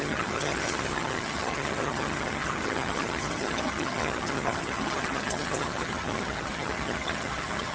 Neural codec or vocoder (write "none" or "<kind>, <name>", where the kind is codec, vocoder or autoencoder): vocoder, HiFi-GAN